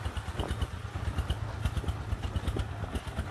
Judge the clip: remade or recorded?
recorded